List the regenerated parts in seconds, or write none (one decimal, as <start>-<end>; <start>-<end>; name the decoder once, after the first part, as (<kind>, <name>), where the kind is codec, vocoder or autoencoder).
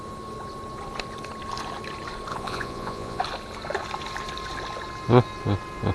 2.3-3.2 (vocoder, Vocos)